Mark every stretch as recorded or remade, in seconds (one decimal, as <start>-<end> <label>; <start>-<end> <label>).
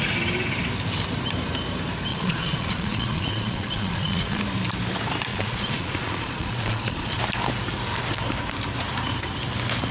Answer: 0.0-2.1 recorded; 2.1-4.4 remade; 4.4-5.3 recorded; 5.3-7.2 remade; 7.2-9.9 recorded